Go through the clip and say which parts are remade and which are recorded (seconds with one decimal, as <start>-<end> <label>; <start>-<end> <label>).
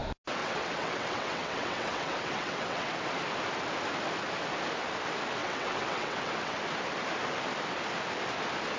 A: 0.0-0.4 recorded; 0.4-2.9 remade; 2.9-5.4 recorded; 5.4-6.6 remade; 6.6-8.8 recorded